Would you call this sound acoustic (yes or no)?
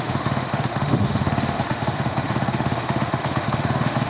no